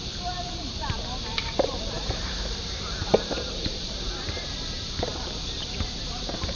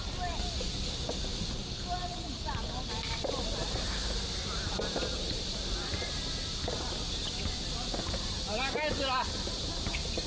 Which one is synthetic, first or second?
first